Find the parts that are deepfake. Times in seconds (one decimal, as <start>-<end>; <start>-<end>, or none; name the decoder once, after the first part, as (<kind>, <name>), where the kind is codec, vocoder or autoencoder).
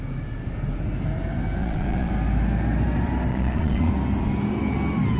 1.6-2.1 (vocoder, Vocos); 3.3-3.9